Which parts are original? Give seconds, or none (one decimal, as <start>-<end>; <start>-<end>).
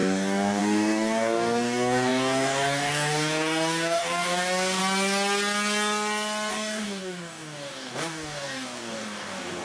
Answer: 4.8-6.5